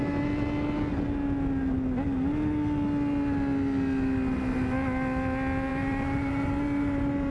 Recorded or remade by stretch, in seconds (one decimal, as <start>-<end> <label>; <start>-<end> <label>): 0.0-5.7 recorded; 5.7-7.3 remade